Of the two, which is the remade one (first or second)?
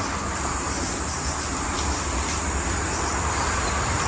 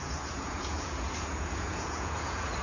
second